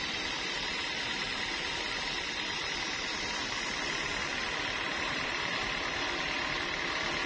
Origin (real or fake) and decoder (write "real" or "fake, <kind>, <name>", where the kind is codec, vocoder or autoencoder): real